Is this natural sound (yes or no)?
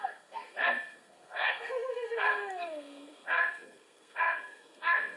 no